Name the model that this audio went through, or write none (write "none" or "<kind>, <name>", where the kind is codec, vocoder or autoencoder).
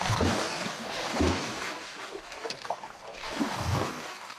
codec, DAC